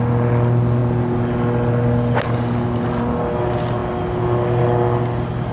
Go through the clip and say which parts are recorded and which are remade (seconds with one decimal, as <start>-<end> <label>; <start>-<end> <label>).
0.0-5.5 recorded